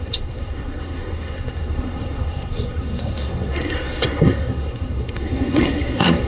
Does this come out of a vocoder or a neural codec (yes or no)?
yes